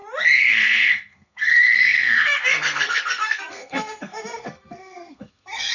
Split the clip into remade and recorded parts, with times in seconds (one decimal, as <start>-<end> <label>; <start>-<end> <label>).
0.0-0.5 recorded; 0.5-5.7 remade